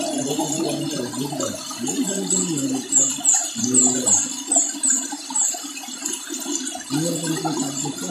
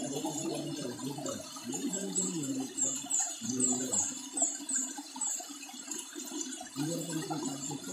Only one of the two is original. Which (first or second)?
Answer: first